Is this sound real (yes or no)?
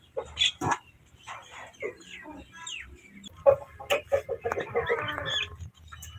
yes